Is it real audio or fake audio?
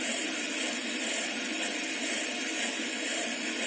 real